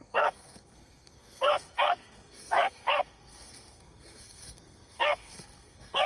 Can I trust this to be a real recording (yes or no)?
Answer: no